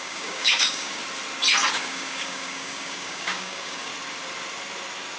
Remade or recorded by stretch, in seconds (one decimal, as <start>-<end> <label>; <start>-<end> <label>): 0.0-1.0 remade; 1.0-1.7 recorded; 1.7-3.9 remade; 3.9-5.2 recorded